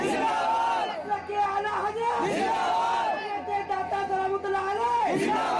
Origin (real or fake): real